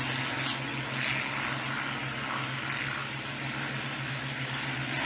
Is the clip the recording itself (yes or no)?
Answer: yes